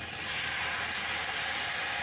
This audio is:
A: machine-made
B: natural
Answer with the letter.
B